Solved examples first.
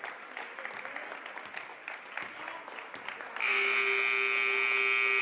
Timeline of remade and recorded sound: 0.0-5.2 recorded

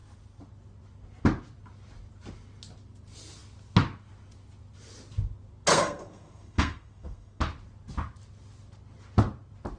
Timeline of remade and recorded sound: 0.0-5.7 recorded; 5.7-7.4 remade; 7.4-9.8 recorded

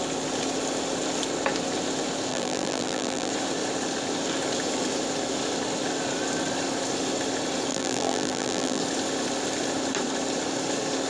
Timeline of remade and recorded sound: 0.0-2.3 recorded; 2.3-3.3 remade; 3.3-7.7 recorded; 7.7-8.8 remade; 8.8-11.1 recorded

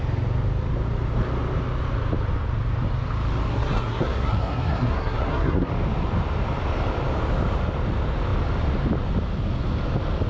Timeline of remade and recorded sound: 0.0-3.5 recorded; 3.5-5.7 remade; 5.7-10.3 recorded

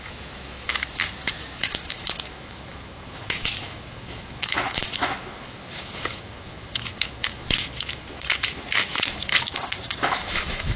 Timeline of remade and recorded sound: 0.0-10.8 remade

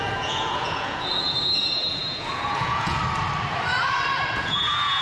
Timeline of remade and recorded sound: 0.0-3.0 remade; 3.0-4.3 recorded; 4.3-5.0 remade